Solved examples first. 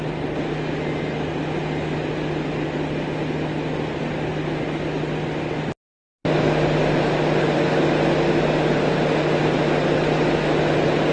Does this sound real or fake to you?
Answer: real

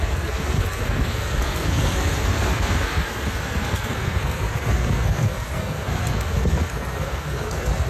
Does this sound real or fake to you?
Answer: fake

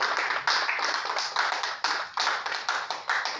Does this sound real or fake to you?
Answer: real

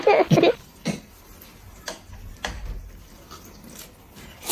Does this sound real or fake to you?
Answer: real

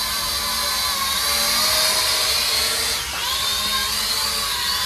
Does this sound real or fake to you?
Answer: real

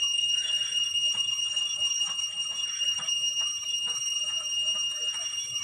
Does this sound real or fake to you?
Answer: fake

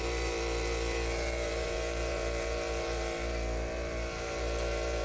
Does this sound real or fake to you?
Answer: fake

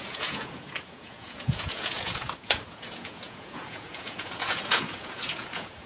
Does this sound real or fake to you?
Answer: fake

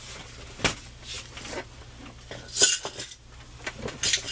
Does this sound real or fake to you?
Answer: real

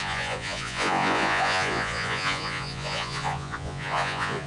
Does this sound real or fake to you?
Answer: fake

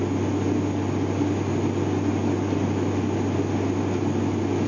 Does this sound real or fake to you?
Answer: real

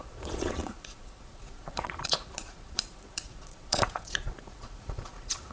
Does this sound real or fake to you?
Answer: fake